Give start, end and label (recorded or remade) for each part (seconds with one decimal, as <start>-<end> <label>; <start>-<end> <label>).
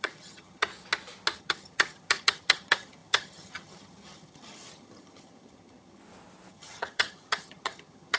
0.0-0.7 remade; 0.7-1.4 recorded; 1.4-6.0 remade; 6.0-6.5 recorded; 6.5-8.2 remade